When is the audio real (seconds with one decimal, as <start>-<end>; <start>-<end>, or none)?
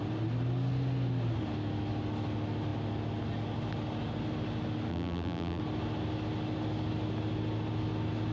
0.0-4.9; 5.6-8.3